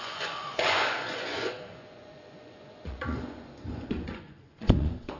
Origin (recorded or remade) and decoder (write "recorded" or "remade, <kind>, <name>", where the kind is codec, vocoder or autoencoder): remade, vocoder, Vocos